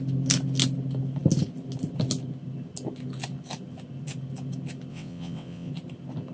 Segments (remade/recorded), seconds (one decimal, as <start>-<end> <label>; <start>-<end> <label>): 0.0-4.9 recorded; 4.9-5.7 remade; 5.7-6.3 recorded